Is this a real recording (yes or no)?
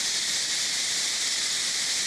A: yes